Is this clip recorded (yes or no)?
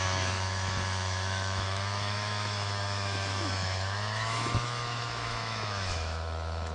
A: no